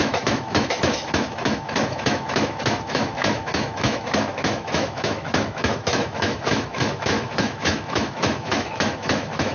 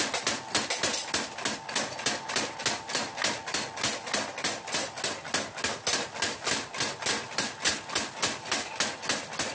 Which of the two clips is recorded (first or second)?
second